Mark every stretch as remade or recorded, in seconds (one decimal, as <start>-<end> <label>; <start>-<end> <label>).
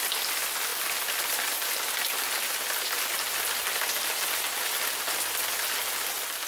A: 0.0-6.5 recorded